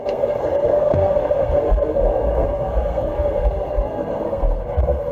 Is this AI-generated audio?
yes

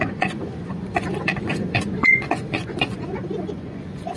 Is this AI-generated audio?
yes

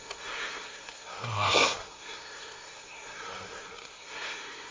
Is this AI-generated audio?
yes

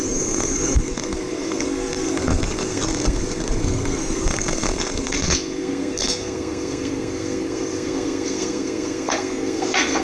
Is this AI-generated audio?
yes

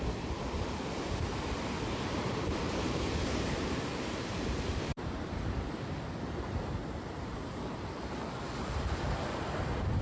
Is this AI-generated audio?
yes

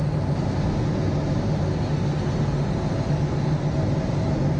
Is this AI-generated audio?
no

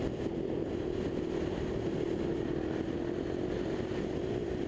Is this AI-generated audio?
no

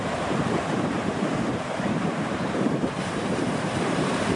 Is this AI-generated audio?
yes